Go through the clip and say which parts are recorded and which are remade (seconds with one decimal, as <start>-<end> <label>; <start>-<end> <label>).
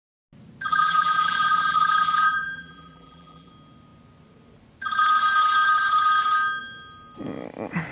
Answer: 0.0-0.7 recorded; 0.7-3.5 remade; 3.5-7.9 recorded